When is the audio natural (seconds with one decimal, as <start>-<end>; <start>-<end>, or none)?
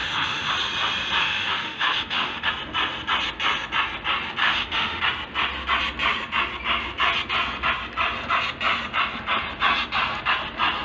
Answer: 0.5-1.2; 2.5-4.4; 5.0-10.8